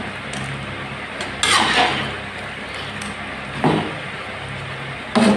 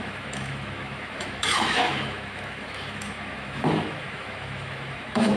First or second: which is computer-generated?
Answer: second